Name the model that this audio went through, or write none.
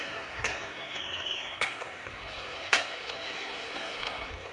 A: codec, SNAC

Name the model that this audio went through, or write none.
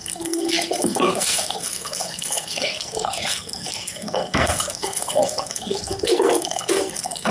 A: codec, SNAC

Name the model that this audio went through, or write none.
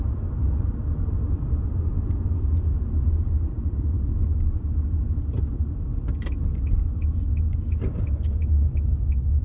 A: none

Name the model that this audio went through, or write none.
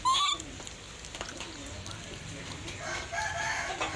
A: none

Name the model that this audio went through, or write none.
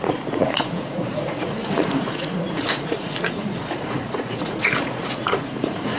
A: vocoder, Vocos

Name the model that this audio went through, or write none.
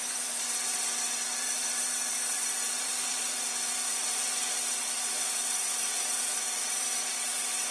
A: vocoder, Vocos